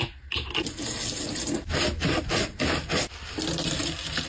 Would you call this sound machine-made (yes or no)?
no